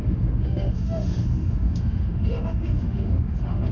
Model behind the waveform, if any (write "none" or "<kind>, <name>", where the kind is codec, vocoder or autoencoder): autoencoder, DAC-VAE